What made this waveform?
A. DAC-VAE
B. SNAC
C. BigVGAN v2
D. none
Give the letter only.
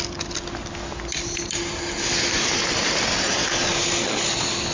D